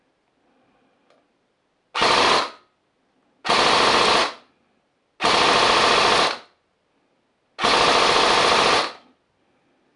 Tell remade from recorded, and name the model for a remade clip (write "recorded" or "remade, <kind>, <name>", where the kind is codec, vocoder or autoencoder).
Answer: recorded